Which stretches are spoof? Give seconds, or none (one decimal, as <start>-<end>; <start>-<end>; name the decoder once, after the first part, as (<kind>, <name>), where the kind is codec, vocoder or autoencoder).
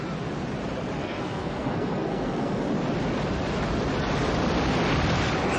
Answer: 1.0-2.7 (codec, SNAC)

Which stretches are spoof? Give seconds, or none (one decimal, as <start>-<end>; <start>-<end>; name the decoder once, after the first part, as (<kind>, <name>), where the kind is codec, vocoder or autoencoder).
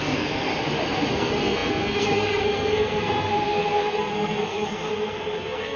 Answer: 0.0-0.5 (codec, SNAC); 1.1-5.8